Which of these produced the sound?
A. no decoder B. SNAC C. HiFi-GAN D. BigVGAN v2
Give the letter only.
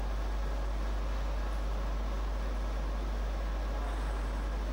A